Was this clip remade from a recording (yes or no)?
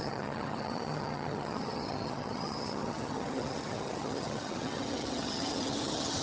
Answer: yes